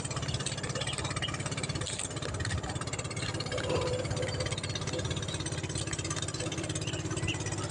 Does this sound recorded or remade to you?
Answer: recorded